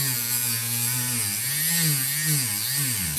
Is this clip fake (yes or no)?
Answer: no